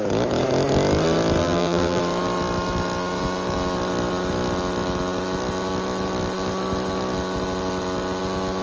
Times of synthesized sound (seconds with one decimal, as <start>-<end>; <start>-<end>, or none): 1.4-2.0

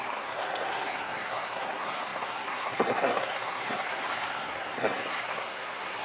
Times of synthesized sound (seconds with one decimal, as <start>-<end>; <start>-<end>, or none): 0.0-6.0

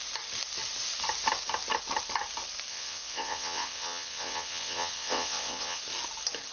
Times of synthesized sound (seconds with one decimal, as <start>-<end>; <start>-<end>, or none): 2.7-5.8

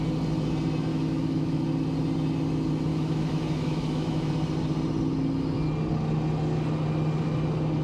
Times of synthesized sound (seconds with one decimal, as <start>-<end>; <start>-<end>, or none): 0.9-1.6; 2.9-4.3

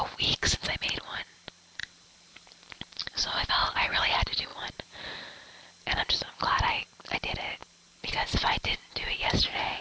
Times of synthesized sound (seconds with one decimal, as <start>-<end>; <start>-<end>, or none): 1.8-3.5; 7.6-9.3

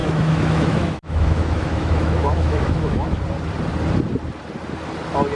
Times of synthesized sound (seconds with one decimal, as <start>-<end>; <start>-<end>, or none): 0.0-3.2

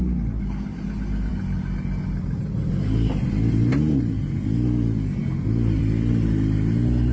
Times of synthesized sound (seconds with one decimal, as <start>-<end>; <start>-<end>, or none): none

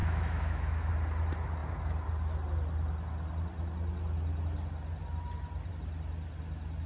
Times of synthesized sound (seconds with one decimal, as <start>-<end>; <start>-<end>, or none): 0.0-0.9